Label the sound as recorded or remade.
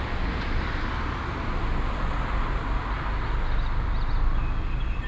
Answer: recorded